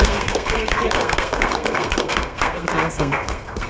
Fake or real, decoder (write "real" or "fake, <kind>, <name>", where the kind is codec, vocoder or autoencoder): fake, codec, SNAC